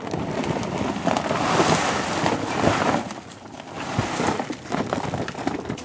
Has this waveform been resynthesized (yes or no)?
no